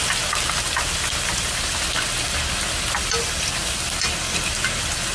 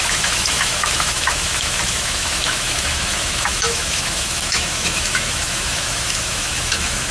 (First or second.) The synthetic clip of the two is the second